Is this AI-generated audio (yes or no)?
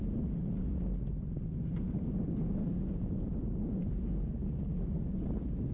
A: no